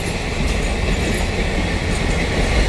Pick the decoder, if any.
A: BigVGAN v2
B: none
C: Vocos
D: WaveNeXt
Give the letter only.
B